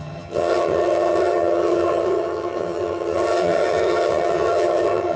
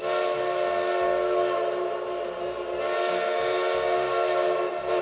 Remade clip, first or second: first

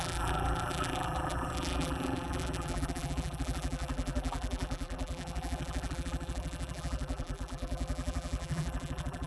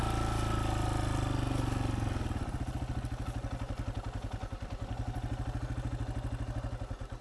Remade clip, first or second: first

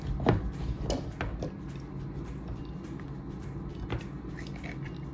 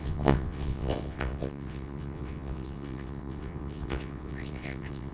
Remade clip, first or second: second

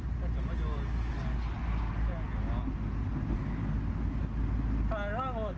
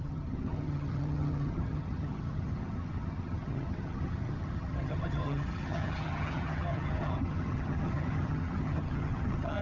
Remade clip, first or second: second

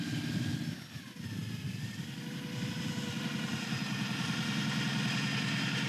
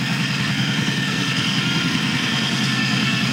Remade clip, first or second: second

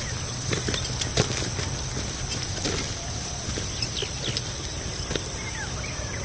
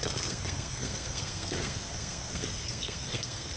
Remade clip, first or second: second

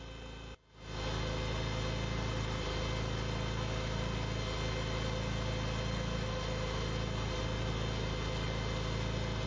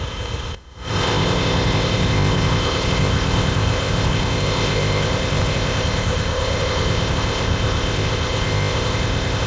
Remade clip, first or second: second